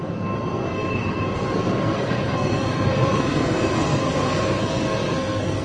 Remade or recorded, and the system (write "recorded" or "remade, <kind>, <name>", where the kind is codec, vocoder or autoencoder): remade, codec, SNAC